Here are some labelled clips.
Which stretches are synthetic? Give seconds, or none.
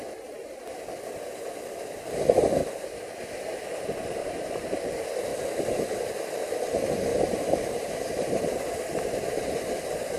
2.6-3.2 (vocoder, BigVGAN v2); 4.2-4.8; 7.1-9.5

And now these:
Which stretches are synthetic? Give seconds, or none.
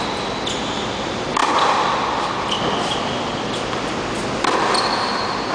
none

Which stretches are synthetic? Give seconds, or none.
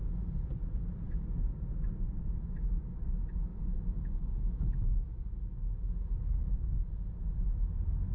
3.5-6.9 (autoencoder, DAC-VAE)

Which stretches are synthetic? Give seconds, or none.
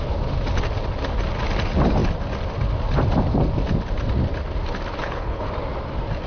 5.0-5.5 (codec, HILCodec)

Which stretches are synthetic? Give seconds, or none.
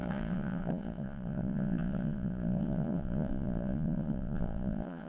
0.0-5.1 (vocoder, Vocos)